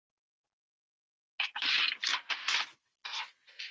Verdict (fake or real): real